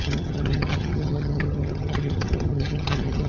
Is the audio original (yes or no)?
no